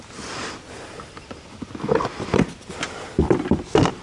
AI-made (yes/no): no